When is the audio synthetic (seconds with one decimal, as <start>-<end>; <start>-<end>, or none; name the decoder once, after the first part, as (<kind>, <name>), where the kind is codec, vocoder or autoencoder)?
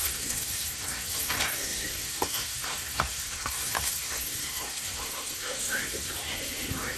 0.0-7.0 (codec, SNAC)